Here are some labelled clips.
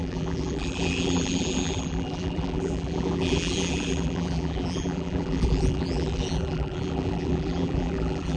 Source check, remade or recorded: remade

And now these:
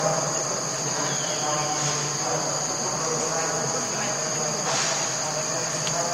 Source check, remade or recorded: recorded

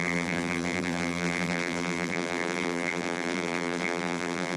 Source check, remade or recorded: remade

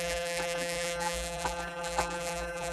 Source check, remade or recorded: remade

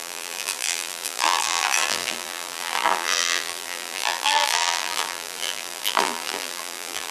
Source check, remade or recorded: remade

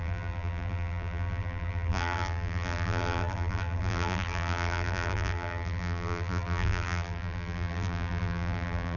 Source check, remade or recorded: remade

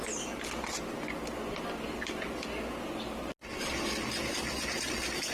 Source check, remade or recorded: recorded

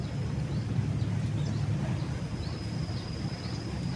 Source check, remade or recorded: recorded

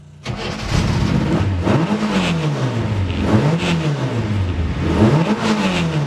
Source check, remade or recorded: recorded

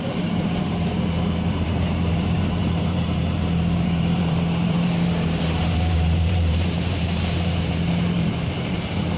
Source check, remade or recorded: remade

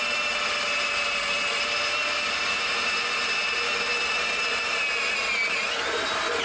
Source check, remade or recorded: recorded